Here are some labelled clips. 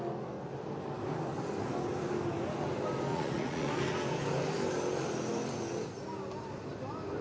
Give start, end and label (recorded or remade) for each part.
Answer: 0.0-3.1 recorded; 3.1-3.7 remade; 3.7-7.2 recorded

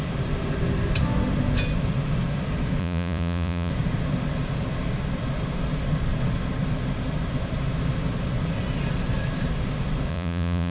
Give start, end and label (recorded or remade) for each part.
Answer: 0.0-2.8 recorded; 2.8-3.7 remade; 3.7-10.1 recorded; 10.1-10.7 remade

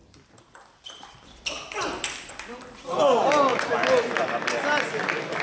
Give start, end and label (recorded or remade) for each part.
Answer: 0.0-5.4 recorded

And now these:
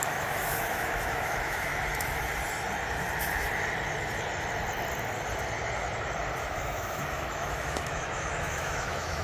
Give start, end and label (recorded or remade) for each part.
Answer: 0.0-1.7 remade; 1.7-6.4 recorded; 6.4-9.2 remade